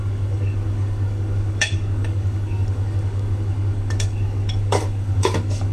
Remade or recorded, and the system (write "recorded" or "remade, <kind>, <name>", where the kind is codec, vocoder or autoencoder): remade, codec, DAC